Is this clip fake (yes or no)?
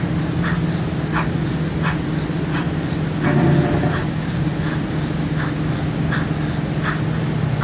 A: no